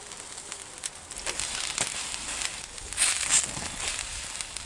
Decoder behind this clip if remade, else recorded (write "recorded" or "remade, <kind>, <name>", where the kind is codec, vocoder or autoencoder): recorded